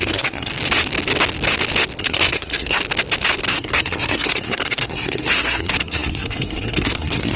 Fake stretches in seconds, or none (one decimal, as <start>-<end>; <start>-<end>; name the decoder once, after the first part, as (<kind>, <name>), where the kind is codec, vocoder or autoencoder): 0.0-0.5 (codec, SNAC); 2.0-2.8; 3.5-7.4